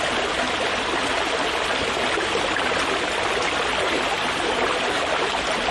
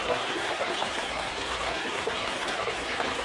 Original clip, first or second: first